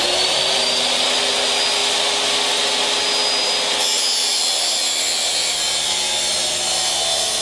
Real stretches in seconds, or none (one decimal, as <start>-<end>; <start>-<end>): 0.0-7.4